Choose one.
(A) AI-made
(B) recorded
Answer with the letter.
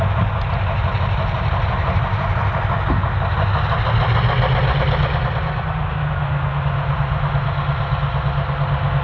B